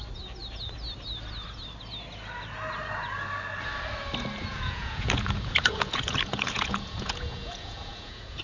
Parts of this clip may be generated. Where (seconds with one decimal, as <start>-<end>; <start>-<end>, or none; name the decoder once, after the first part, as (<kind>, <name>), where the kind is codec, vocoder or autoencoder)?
4.5-8.4 (vocoder, Vocos)